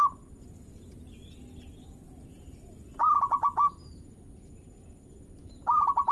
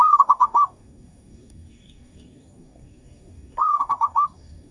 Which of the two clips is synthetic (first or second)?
second